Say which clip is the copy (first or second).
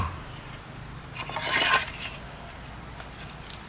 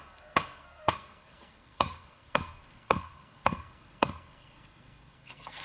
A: second